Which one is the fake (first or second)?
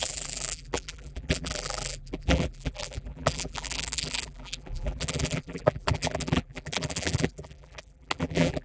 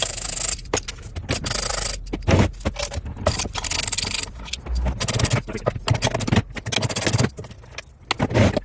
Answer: first